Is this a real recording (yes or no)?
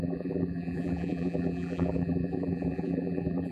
no